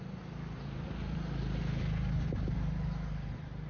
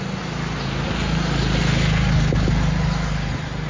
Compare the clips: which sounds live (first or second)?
second